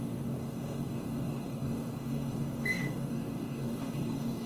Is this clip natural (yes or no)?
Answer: no